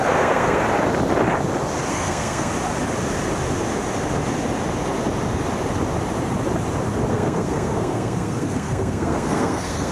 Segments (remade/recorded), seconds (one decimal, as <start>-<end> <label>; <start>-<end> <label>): 0.0-0.6 remade; 0.6-1.9 recorded; 1.9-2.5 remade; 2.5-7.1 recorded; 7.1-9.9 remade